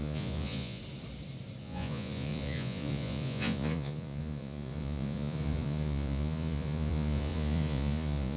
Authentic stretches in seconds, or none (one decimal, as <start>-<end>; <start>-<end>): 0.8-1.6